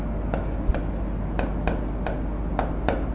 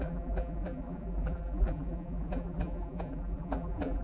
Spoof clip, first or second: second